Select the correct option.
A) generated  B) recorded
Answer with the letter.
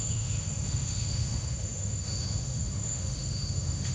A